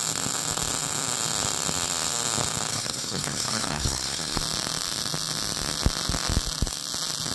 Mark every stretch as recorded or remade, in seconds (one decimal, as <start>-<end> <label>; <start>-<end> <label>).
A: 0.0-2.7 recorded; 2.7-4.4 remade; 4.4-7.3 recorded